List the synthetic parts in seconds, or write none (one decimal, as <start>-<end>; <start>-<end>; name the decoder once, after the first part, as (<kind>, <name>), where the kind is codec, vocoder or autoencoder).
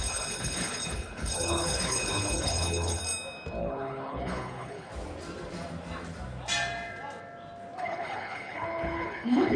0.0-3.0 (codec, HILCodec); 3.6-4.9; 7.8-9.6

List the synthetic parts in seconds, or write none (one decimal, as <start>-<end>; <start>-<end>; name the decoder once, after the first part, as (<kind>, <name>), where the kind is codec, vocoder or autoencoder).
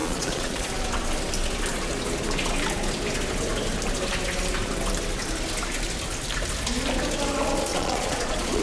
0.0-0.7 (vocoder, Vocos); 7.7-8.6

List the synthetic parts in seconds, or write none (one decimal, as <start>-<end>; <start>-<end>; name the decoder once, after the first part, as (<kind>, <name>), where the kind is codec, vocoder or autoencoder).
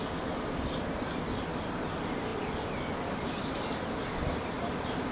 2.3-5.1 (vocoder, BigVGAN v2)